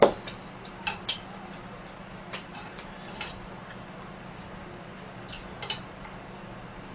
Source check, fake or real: real